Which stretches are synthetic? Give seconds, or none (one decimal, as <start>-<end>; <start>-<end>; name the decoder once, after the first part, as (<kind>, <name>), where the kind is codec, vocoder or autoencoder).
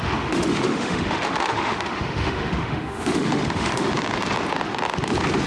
0.0-3.9 (autoencoder, DAC-VAE)